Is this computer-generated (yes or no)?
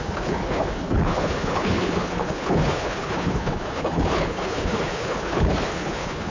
yes